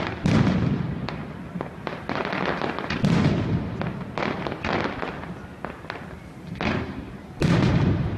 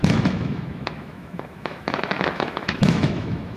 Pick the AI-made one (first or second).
second